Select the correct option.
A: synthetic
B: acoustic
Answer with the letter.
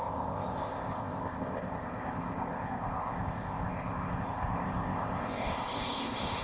A